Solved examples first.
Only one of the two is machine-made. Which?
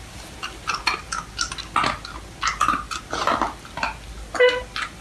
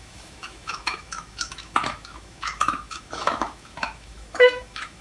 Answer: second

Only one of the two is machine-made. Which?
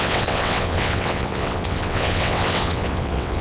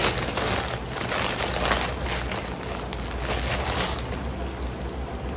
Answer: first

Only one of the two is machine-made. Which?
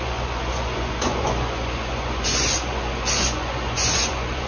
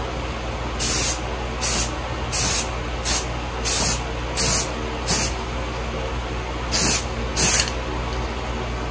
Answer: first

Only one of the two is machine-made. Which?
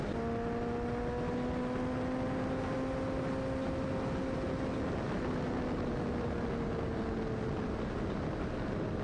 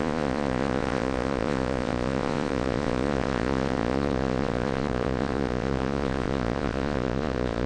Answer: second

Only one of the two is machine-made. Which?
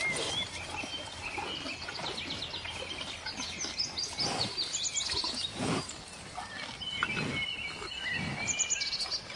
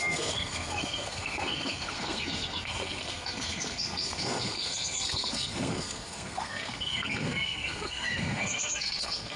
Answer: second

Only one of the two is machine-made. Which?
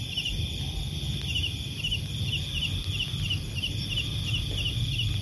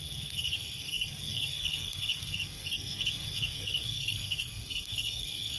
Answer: second